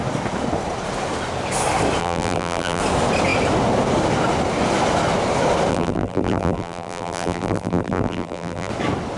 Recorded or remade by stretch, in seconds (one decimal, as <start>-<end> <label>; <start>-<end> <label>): 0.0-2.0 recorded; 2.0-2.8 remade; 2.8-5.7 recorded; 5.7-8.7 remade; 8.7-9.2 recorded